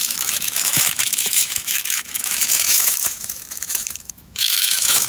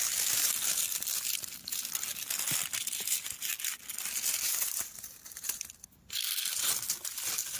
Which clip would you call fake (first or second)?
first